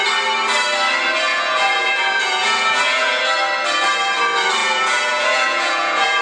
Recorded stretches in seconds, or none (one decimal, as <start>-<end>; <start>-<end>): 0.0-1.3; 3.2-4.6